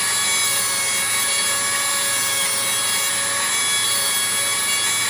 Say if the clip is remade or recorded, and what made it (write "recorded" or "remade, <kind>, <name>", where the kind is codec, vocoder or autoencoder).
recorded